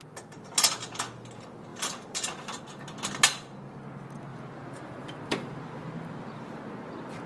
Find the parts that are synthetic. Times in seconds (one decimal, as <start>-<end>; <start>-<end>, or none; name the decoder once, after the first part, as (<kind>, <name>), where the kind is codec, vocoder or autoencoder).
1.7-2.6 (vocoder, BigVGAN v2); 4.3-6.5